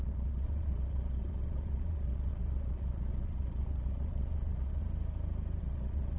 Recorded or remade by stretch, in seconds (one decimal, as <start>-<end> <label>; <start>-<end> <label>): 0.0-4.8 remade; 4.8-5.6 recorded; 5.6-6.2 remade